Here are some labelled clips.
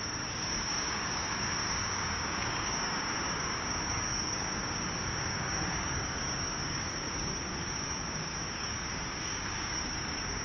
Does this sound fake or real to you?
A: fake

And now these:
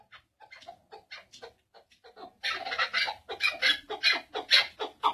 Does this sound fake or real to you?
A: real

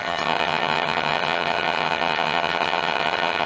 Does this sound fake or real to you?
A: fake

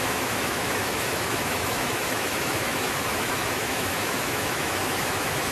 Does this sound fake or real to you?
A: fake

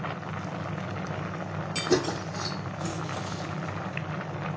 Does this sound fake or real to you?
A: real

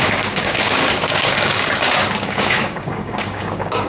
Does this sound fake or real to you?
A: fake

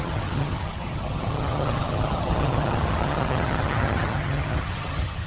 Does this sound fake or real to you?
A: fake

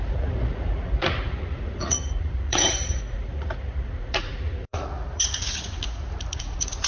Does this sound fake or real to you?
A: fake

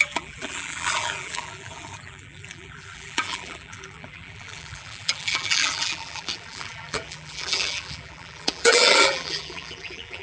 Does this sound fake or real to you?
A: fake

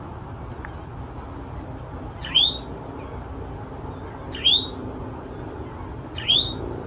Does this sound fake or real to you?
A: real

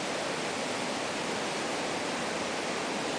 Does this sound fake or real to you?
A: real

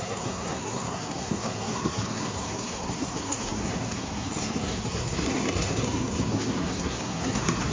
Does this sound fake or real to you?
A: fake